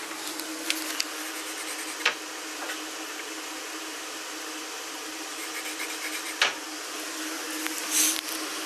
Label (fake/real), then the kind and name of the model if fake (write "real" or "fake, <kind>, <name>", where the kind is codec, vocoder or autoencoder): real